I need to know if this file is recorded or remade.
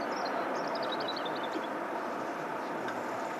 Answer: recorded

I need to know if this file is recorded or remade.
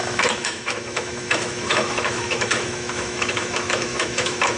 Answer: remade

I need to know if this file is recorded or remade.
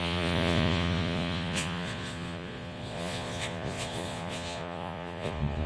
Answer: remade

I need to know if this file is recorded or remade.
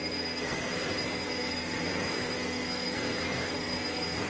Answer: remade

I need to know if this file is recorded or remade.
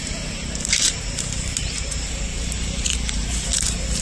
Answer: remade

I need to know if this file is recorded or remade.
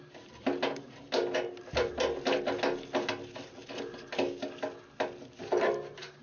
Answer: recorded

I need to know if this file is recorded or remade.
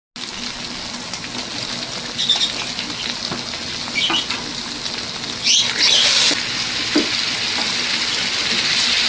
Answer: recorded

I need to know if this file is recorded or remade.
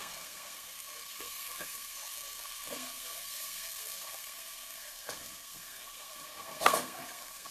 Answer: remade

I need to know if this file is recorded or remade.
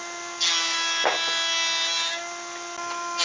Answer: recorded